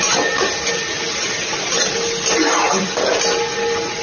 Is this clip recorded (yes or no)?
yes